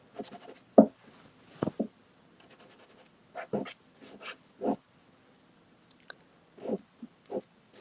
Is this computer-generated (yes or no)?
yes